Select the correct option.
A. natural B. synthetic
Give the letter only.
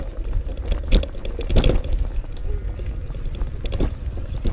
A